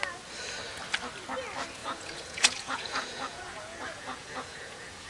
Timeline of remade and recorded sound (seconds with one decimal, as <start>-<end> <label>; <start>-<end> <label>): 0.0-1.8 recorded; 1.8-5.1 remade